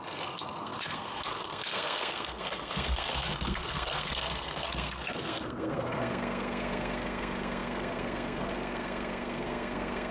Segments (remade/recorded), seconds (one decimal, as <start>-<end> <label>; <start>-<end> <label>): 0.0-10.1 remade